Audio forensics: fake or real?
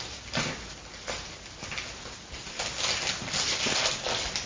real